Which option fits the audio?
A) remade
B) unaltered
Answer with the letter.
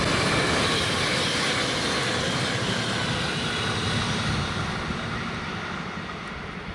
B